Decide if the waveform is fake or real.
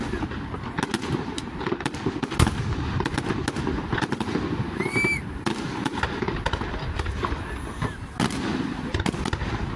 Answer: real